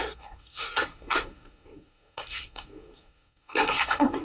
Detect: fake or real fake